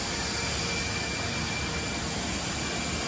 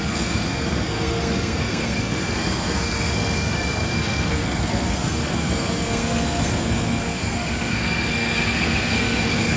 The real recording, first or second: first